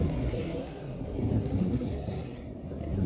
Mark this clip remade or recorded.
remade